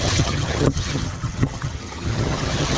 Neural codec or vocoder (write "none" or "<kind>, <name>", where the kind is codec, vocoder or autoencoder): vocoder, HiFi-GAN